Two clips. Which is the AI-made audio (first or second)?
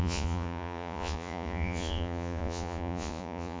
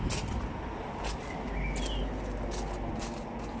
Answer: first